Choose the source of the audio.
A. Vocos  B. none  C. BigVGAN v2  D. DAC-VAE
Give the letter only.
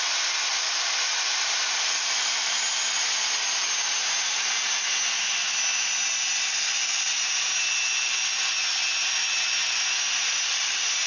B